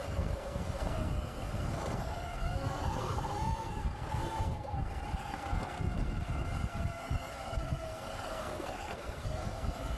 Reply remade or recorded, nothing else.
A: remade